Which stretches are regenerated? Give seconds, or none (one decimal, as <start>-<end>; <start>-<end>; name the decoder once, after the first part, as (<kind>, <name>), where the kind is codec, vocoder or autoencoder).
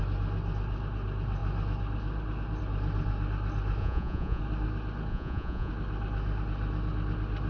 3.8-4.4 (vocoder, Vocos); 5.1-5.7